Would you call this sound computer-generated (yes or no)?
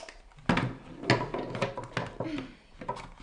no